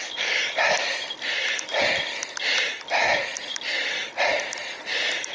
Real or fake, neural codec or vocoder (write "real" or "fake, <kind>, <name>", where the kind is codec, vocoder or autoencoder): real